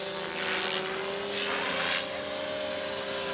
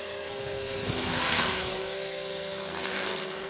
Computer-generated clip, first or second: second